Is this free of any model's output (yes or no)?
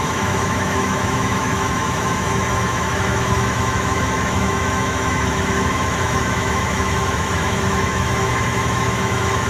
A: no